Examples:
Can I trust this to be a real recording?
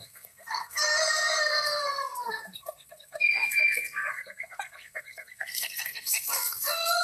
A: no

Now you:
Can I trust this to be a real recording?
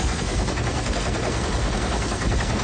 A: no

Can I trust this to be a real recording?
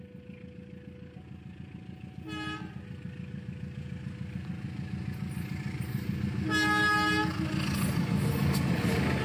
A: yes